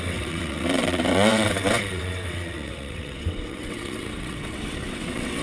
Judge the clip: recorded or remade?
remade